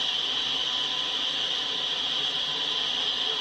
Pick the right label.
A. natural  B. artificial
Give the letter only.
A